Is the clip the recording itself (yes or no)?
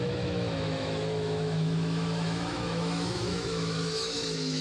no